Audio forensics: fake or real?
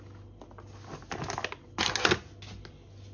real